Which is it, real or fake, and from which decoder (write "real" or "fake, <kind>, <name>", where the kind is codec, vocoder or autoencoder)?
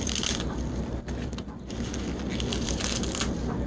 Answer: real